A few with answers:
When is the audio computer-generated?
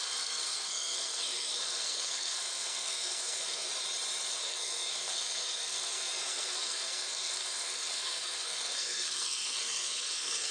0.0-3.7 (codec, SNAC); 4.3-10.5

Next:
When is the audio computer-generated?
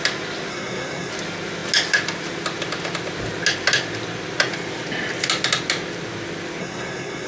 0.5-1.1 (codec, SNAC); 6.6-7.3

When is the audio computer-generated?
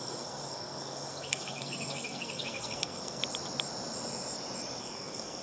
0.0-3.2 (codec, SNAC); 4.8-5.4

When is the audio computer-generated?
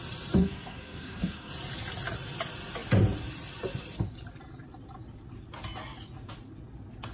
0.4-1.5 (codec, SNAC)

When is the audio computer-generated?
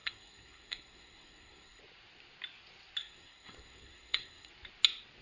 0.0-1.8 (codec, SNAC); 3.0-4.5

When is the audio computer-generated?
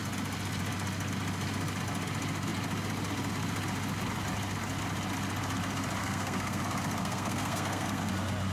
6.0-6.6 (codec, SNAC); 7.0-8.1